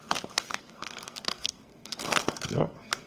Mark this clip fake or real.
fake